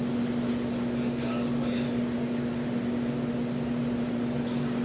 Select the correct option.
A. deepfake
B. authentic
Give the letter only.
B